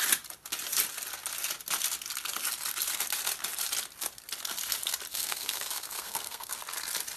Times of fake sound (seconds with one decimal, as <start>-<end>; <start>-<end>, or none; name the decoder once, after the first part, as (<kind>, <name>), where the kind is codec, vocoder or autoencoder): 5.1-6.6 (codec, SNAC)

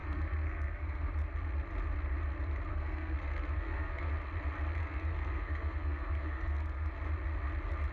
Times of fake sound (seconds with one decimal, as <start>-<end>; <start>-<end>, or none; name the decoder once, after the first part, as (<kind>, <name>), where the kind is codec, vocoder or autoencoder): 0.0-1.1 (codec, SNAC); 2.7-4.1; 4.8-6.9

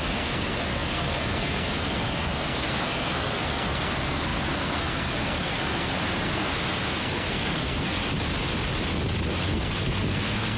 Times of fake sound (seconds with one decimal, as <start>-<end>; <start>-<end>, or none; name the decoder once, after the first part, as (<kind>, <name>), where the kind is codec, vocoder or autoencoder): 0.0-8.0 (codec, SNAC); 9.4-10.6

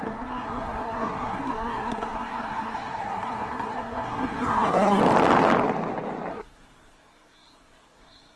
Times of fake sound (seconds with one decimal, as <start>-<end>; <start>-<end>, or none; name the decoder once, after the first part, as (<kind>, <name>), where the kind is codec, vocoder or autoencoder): 0.0-5.0 (codec, SNAC); 6.3-8.4

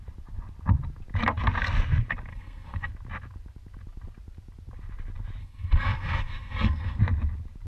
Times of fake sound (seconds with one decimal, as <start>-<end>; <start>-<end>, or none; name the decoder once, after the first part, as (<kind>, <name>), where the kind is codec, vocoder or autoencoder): 2.3-2.9 (codec, SNAC); 5.4-7.0

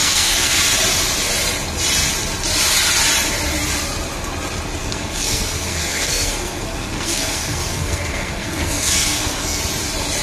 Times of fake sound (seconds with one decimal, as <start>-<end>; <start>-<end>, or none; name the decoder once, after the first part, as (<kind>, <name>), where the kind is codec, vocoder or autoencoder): 0.0-0.6 (codec, SNAC); 4.8-9.6

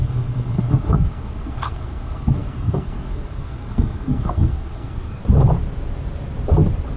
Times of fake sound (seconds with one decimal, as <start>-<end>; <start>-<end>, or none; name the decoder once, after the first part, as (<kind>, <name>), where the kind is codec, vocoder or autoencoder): 0.0-5.2 (codec, SNAC)

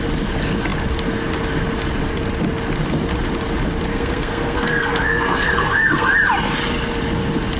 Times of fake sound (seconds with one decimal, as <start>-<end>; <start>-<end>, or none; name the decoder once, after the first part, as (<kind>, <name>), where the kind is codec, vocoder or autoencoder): 3.9-6.1 (codec, SNAC)